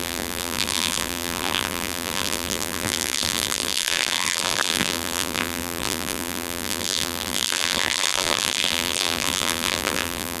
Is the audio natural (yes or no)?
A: no